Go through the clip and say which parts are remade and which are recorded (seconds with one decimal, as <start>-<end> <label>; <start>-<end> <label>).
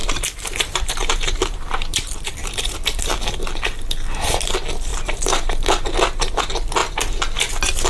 0.0-2.6 remade; 2.6-4.9 recorded; 4.9-6.3 remade; 6.3-7.9 recorded